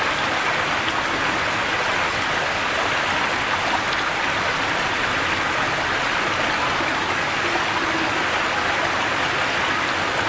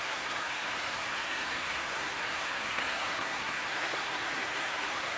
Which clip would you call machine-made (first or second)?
second